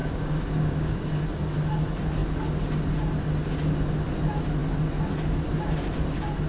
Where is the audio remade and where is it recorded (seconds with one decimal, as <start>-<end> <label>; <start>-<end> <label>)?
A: 0.0-1.2 remade; 1.2-6.5 recorded